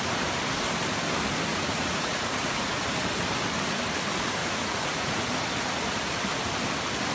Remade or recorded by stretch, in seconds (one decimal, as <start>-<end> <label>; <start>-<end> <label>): 0.0-1.5 recorded; 1.5-2.8 remade; 2.8-4.4 recorded; 4.4-5.2 remade; 5.2-7.1 recorded